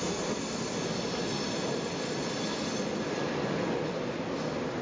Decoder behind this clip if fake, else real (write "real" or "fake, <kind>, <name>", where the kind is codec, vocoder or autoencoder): real